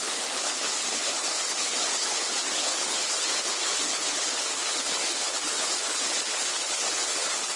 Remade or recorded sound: remade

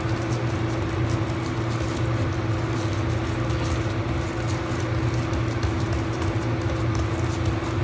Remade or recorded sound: recorded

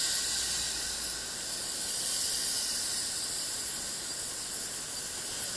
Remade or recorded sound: recorded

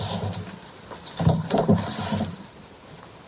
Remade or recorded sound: recorded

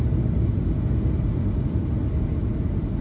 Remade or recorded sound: recorded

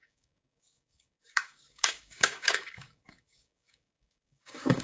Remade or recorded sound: remade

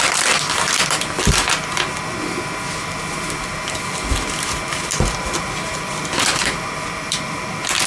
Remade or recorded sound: remade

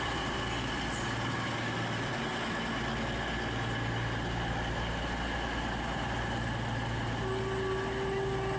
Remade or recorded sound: recorded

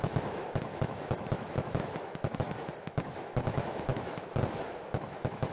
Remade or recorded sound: remade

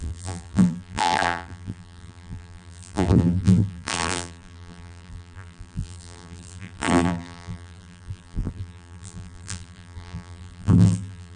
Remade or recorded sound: remade